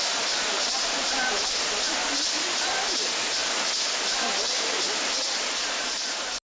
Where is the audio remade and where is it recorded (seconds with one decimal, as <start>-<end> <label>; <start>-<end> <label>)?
0.0-6.5 recorded